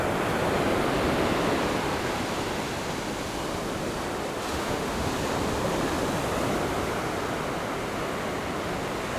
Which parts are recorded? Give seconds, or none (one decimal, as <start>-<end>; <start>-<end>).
0.0-4.5; 5.1-9.2

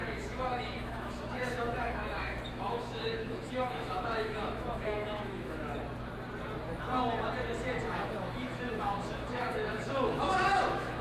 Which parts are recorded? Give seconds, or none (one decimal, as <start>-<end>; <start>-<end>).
5.7-7.8

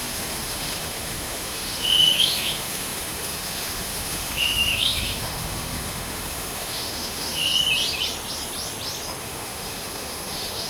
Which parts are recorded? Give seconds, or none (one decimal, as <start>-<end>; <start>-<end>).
7.5-9.2

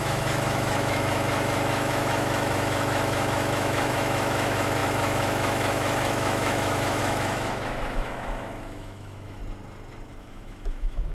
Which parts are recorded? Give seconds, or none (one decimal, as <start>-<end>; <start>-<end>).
9.4-10.2

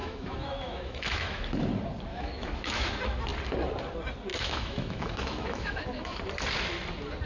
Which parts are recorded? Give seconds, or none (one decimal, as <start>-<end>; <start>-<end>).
1.7-2.1; 2.9-4.3; 6.2-7.3